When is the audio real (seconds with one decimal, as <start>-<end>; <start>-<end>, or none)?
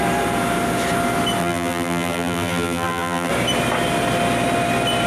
0.0-1.4; 3.3-5.1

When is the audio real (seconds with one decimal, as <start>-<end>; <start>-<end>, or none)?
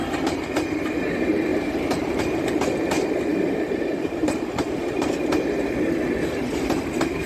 0.0-1.5; 2.2-3.3; 5.7-7.3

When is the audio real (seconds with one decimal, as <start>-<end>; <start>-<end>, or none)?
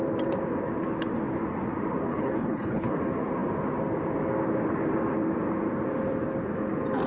0.0-2.1; 3.0-7.1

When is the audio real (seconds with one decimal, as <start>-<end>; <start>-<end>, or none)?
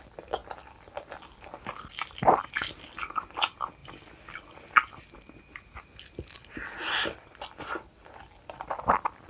0.0-9.3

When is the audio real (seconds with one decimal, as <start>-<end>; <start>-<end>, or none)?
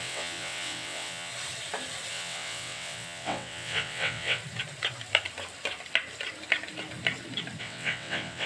1.3-2.1; 4.4-7.6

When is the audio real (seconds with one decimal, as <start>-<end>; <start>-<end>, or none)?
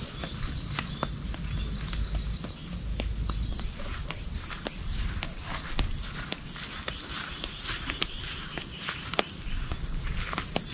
0.0-10.7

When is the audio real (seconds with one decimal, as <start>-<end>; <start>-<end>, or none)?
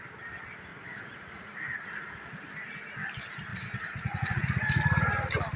0.0-0.7; 2.3-3.5; 4.8-5.6